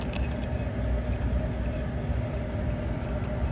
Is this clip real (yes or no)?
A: yes